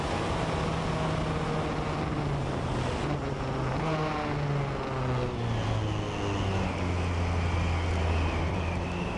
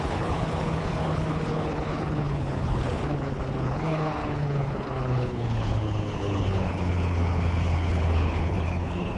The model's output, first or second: second